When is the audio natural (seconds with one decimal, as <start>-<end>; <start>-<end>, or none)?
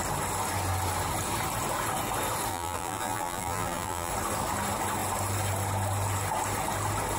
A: 0.0-2.5; 4.1-7.2